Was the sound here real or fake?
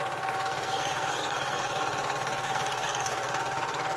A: fake